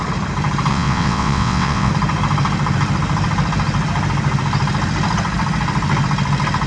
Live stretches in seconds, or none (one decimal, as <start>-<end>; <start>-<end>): 0.0-0.7; 1.9-6.7